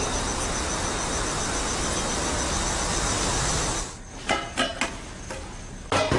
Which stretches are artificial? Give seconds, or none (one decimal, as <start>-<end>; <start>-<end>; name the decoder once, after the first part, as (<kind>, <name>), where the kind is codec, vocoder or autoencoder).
none